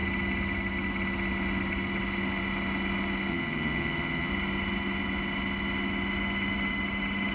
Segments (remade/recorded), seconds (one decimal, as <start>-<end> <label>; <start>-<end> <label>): 0.0-3.3 recorded; 3.3-4.3 remade; 4.3-7.3 recorded